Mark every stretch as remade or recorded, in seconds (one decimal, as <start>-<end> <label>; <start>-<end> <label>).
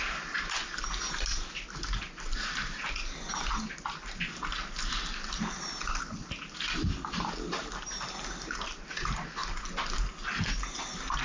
0.0-11.2 recorded